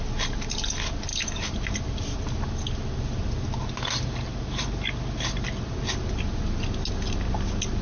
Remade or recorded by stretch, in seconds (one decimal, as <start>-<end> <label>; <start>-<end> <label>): 0.0-7.8 recorded